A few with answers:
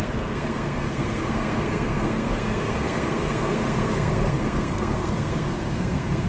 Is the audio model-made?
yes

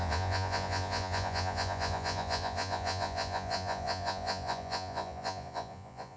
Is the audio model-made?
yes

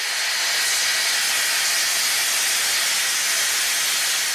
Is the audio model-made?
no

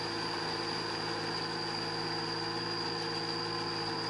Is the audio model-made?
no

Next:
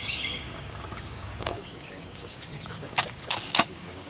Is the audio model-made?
yes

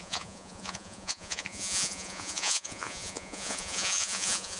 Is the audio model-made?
yes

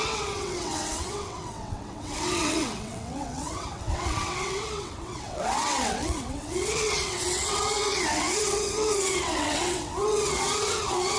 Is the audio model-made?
yes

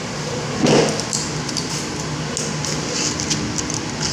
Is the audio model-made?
no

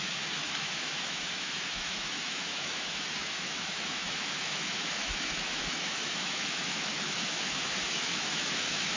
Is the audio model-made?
yes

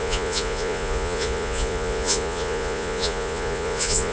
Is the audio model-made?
yes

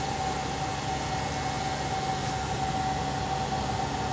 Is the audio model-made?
no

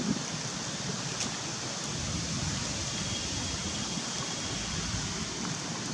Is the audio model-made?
no